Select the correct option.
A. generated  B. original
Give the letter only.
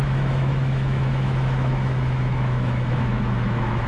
A